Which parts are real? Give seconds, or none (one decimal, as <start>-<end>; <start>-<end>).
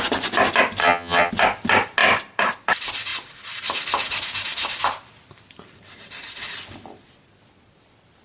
0.0-0.8; 1.3-8.2